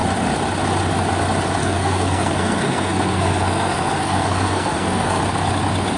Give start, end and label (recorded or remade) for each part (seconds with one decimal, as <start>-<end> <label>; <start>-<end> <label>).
0.0-1.6 recorded; 1.6-5.2 remade; 5.2-6.0 recorded